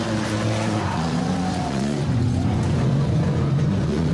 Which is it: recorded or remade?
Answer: remade